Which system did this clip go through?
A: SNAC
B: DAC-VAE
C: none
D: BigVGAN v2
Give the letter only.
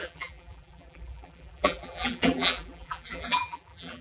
D